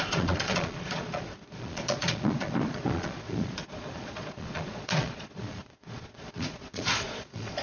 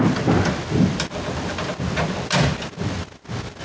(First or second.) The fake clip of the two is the first